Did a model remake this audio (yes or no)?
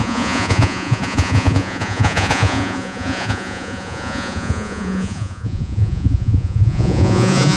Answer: yes